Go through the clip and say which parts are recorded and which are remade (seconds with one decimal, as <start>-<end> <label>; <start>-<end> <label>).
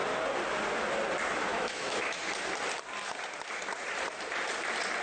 0.0-1.5 recorded; 1.5-2.2 remade; 2.2-5.0 recorded